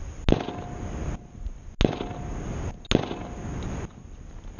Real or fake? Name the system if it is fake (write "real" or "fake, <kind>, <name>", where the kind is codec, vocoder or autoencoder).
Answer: real